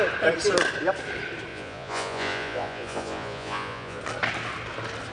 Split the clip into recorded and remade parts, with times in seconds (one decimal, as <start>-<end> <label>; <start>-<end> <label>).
0.0-1.5 recorded; 1.5-4.0 remade; 4.0-5.1 recorded